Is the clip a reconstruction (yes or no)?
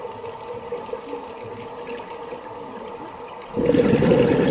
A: no